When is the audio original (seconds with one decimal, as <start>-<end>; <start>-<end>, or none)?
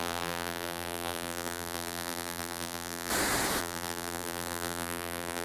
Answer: 3.1-3.6